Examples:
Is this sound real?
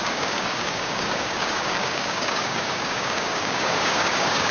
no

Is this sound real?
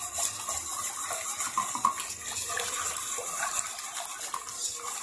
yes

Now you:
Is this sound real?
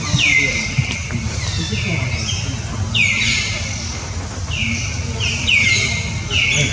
yes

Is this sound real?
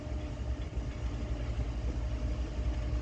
yes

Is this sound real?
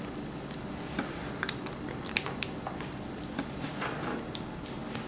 yes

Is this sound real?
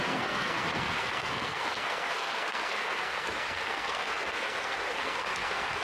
no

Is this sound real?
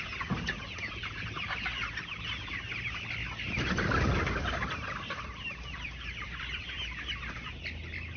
no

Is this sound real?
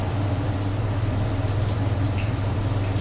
no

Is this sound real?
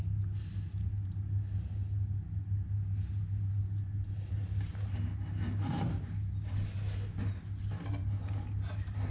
yes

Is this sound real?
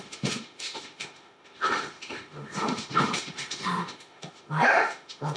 no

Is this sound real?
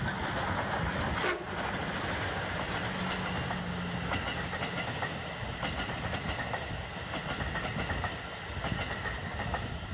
yes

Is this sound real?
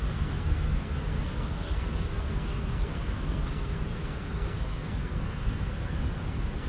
no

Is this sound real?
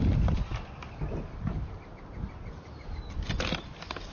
yes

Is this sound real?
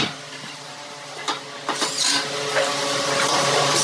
yes